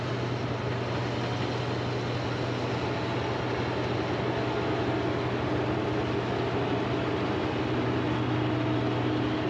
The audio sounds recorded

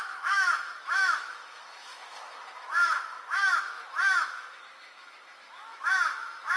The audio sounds remade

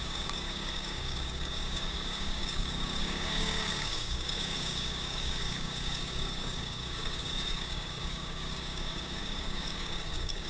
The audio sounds remade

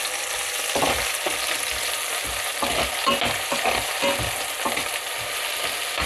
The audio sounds recorded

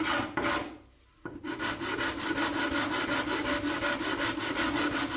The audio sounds recorded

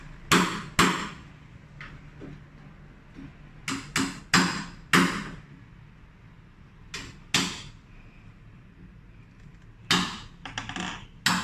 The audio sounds recorded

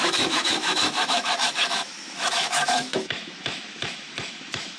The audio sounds remade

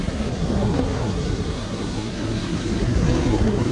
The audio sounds remade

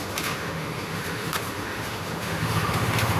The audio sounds remade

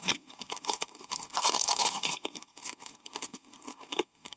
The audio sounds remade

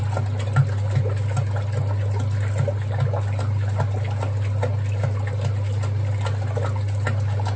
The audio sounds recorded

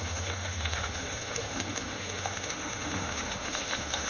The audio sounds remade